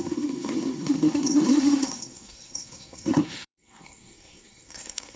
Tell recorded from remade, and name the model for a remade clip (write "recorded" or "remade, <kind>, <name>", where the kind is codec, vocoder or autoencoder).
remade, codec, SNAC